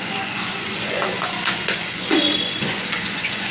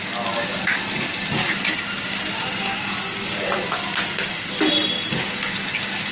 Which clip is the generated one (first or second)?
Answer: first